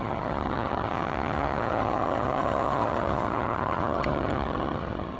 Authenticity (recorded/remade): remade